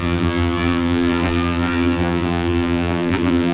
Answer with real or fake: fake